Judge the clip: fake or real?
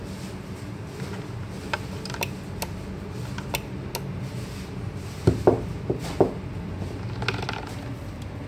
real